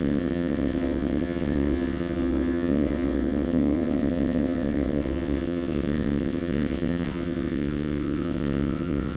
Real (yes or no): no